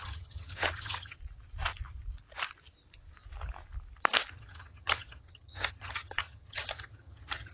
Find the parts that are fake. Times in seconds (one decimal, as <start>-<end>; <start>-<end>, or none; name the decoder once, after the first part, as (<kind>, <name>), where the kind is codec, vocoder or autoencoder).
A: 0.0-1.2 (vocoder, HiFi-GAN); 4.3-7.5